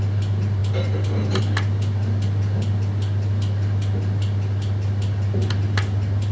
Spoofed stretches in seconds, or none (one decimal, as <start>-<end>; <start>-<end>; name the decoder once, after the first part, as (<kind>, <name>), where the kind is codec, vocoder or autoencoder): none